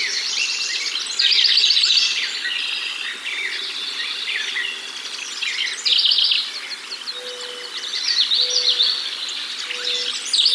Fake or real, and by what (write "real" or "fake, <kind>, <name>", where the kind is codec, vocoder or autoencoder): real